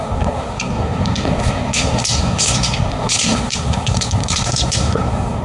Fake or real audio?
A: fake